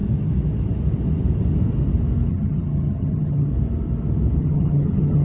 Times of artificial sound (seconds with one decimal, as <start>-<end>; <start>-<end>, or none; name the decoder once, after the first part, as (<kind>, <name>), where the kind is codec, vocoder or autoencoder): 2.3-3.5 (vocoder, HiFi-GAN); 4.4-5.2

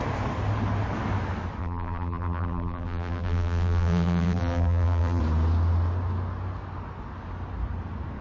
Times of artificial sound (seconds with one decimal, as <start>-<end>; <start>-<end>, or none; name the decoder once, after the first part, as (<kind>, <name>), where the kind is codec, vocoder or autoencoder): 1.6-5.2 (vocoder, BigVGAN v2)

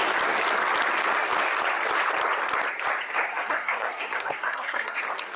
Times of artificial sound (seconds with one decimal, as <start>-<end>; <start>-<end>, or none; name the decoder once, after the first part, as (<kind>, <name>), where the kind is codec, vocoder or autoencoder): 3.3-5.0 (codec, SNAC)

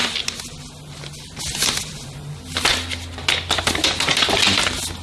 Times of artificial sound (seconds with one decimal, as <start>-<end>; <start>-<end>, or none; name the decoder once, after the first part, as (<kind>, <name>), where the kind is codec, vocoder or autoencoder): none

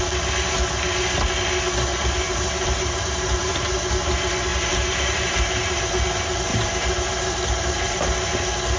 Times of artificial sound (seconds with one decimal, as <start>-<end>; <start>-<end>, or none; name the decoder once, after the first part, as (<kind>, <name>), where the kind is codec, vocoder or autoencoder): 1.9-4.0 (vocoder, BigVGAN v2); 4.5-5.8; 6.5-8.0

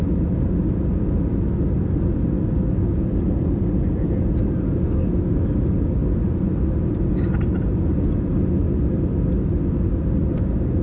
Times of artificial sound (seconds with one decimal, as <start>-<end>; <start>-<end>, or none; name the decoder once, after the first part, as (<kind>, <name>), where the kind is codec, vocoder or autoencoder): none

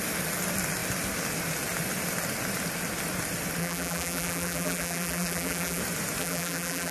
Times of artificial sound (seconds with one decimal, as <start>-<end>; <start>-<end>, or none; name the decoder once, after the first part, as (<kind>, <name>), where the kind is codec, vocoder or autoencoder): 3.6-5.8 (vocoder, BigVGAN v2); 6.2-6.9